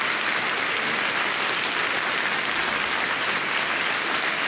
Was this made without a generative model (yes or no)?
yes